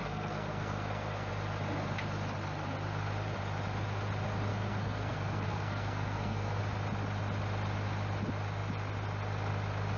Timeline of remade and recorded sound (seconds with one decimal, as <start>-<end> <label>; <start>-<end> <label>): 0.0-1.3 remade; 1.3-4.5 recorded; 4.5-6.6 remade; 6.6-10.0 recorded